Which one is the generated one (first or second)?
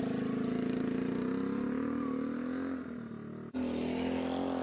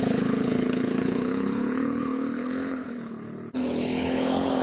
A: second